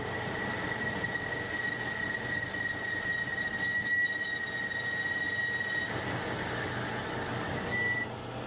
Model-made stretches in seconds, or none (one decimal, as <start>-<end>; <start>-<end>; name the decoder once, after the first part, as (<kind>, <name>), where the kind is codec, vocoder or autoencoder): none